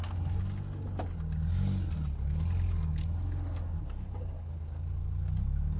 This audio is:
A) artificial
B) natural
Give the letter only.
B